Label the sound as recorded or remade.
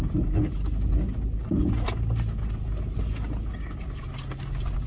recorded